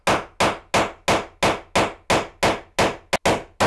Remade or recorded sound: recorded